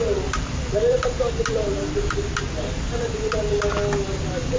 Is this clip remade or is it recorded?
recorded